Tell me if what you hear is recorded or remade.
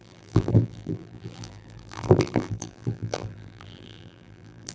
remade